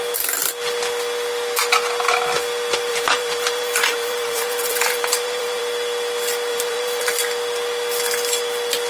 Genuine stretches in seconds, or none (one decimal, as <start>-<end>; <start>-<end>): 0.0-2.9; 5.6-6.5; 7.1-8.9

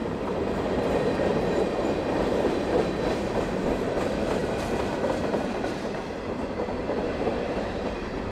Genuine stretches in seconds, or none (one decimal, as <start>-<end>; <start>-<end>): 0.8-1.3; 3.6-4.4